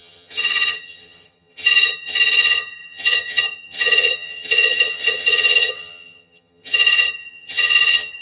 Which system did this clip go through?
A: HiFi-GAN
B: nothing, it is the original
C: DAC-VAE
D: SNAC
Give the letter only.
A